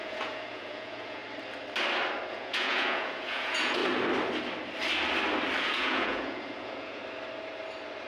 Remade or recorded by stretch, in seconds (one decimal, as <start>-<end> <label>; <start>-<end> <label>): 0.0-1.2 remade; 1.2-2.3 recorded; 2.3-3.8 remade; 3.8-5.6 recorded; 5.6-7.0 remade; 7.0-8.1 recorded